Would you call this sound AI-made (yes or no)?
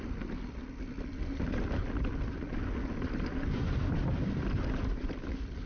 no